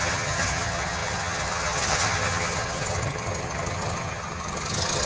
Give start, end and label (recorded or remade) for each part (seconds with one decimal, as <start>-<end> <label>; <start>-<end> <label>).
0.0-5.1 remade